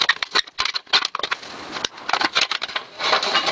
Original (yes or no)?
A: yes